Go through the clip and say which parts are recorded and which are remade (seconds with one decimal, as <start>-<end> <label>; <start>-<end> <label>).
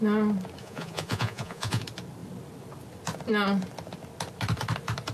0.0-0.6 recorded; 0.6-1.8 remade; 1.8-5.1 recorded